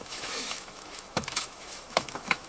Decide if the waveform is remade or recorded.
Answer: remade